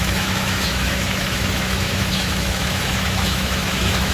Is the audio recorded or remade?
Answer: remade